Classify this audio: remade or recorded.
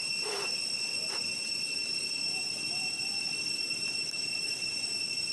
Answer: recorded